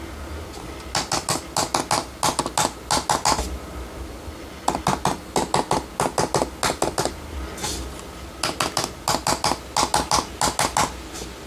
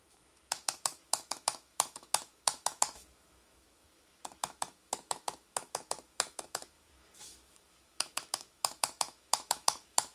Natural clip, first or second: first